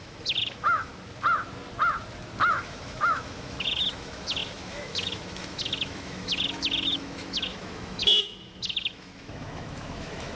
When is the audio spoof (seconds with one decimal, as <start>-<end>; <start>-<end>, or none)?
0.0-0.9; 2.5-10.4